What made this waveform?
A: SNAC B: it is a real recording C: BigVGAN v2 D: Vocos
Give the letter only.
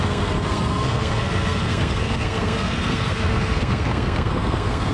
A